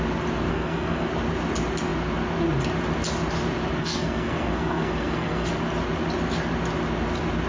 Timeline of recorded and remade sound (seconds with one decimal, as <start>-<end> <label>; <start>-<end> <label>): 0.0-0.5 recorded; 0.5-1.1 remade; 1.1-3.8 recorded; 3.8-5.5 remade; 5.5-7.5 recorded